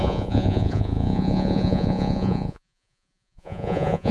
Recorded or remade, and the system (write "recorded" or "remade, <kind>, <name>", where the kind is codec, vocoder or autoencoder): remade, vocoder, Vocos